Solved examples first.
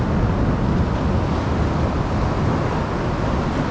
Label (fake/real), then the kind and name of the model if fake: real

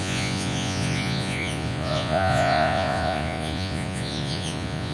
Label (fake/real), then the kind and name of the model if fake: fake, vocoder, Vocos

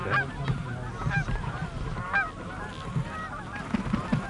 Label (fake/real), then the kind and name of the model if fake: real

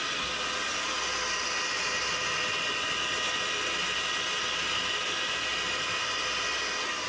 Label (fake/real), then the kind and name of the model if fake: real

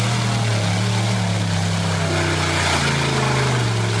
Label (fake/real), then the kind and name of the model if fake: real